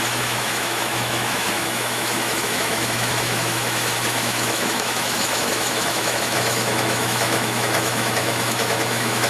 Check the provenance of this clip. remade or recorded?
remade